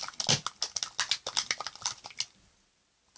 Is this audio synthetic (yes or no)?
no